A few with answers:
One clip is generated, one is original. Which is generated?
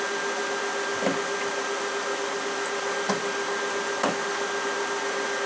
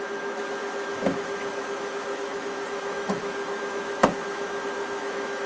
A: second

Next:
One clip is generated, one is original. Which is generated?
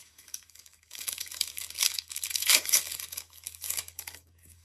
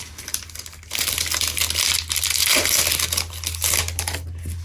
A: first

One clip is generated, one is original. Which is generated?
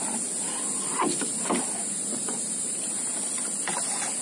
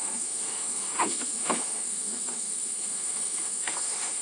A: second